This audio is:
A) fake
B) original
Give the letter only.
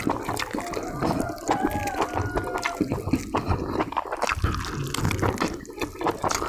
B